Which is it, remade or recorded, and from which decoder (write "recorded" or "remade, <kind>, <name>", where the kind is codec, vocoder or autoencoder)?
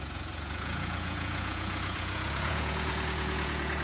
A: remade, vocoder, Vocos